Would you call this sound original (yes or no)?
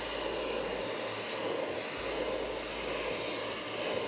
yes